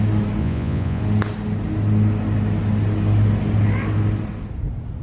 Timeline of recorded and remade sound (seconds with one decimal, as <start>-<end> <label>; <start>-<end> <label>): 0.0-0.4 recorded; 0.4-1.0 remade; 1.0-5.0 recorded